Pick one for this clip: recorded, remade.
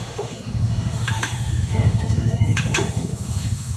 remade